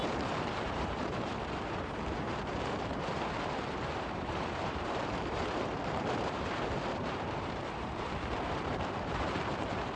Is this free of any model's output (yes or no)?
no